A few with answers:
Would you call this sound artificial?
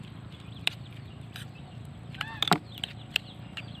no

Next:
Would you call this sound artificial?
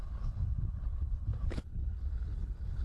yes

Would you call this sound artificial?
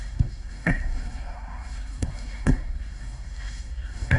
yes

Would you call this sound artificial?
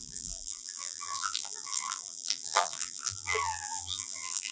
yes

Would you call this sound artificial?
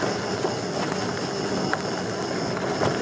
no